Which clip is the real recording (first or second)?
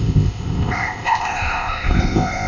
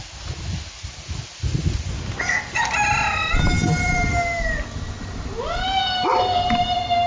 second